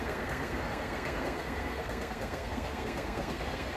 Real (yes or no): no